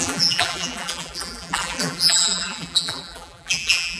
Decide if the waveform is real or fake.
fake